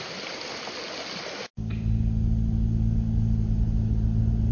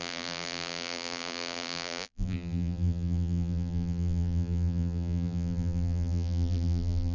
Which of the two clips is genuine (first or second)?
first